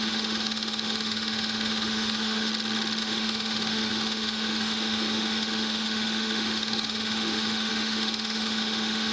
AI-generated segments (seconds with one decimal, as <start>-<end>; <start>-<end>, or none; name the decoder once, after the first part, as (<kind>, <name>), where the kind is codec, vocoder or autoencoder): 0.0-2.5 (autoencoder, DAC-VAE); 3.0-9.1